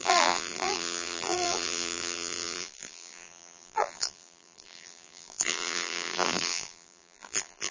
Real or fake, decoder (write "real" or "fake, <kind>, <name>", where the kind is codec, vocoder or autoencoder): fake, vocoder, BigVGAN v2